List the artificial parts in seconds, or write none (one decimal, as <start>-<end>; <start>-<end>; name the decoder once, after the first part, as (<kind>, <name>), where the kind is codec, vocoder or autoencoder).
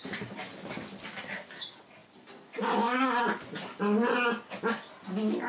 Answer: none